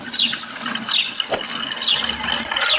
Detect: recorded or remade recorded